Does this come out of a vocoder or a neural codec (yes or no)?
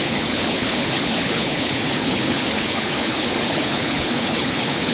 yes